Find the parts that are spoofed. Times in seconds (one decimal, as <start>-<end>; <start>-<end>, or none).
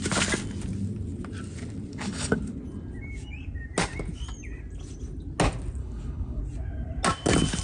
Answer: 1.9-2.4; 5.8-6.4